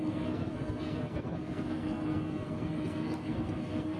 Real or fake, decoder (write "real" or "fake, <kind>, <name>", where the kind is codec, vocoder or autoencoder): fake, codec, SNAC